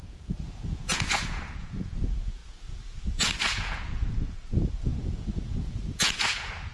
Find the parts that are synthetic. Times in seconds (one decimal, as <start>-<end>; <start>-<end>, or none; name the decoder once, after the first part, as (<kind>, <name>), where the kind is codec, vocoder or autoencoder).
0.0-6.7 (vocoder, Vocos)